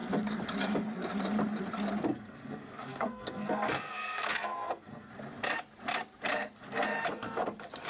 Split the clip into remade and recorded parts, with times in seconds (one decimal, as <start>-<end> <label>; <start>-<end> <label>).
0.0-2.1 recorded; 2.1-5.1 remade; 5.1-7.9 recorded